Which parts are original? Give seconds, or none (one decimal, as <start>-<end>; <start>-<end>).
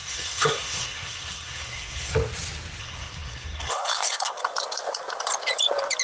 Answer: 2.1-2.8; 4.4-6.0